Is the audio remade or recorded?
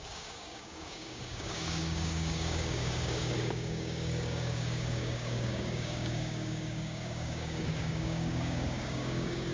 remade